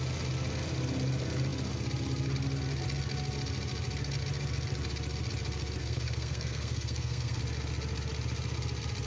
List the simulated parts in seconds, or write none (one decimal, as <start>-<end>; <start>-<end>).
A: 5.8-7.4